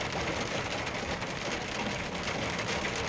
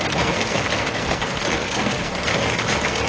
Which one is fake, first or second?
second